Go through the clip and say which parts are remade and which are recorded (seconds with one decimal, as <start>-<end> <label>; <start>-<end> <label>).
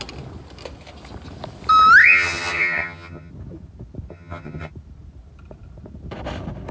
0.0-2.0 recorded; 2.0-3.3 remade; 3.3-4.1 recorded; 4.1-4.7 remade; 4.7-6.7 recorded